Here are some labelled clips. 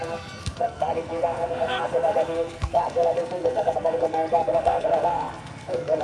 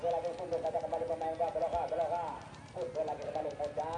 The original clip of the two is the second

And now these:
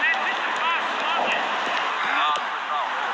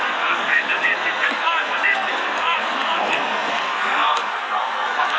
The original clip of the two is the first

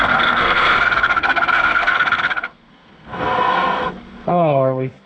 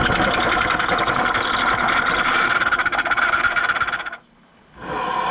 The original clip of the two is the second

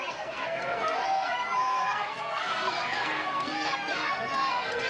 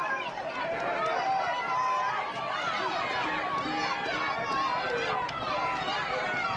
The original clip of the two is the second